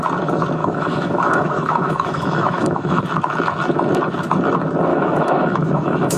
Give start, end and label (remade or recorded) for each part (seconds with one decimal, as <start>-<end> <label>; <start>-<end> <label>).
0.0-0.6 recorded; 0.6-3.0 remade; 3.0-4.9 recorded; 4.9-6.2 remade